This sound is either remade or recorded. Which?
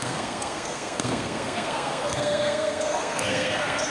remade